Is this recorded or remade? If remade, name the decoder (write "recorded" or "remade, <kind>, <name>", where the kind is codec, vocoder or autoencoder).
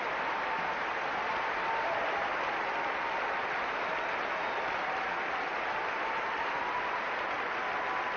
recorded